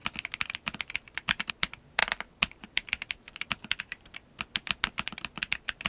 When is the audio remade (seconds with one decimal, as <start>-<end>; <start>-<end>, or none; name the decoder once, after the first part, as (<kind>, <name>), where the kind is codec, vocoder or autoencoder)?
none